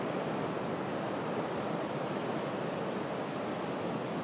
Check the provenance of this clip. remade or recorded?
recorded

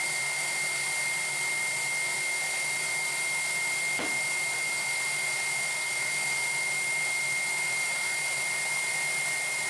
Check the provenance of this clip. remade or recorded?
recorded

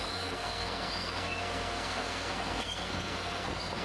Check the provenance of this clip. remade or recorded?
remade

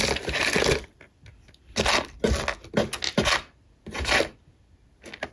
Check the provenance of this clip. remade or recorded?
recorded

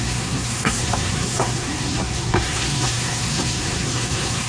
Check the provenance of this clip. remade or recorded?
remade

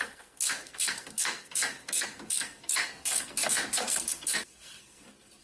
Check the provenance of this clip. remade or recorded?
remade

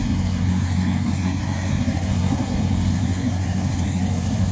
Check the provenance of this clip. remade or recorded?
remade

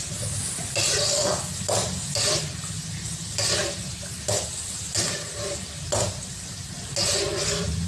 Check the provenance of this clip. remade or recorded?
recorded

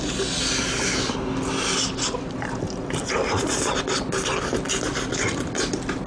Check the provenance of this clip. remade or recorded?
recorded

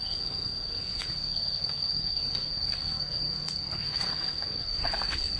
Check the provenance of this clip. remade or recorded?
remade